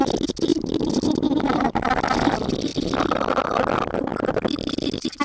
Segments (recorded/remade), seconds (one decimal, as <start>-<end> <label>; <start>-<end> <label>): 0.0-5.2 recorded